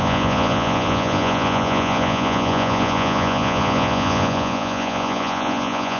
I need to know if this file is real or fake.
fake